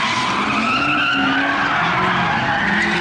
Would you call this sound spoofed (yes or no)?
no